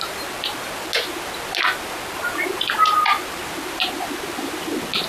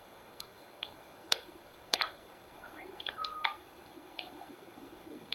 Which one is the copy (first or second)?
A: second